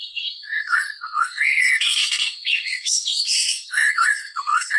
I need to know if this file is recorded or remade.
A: remade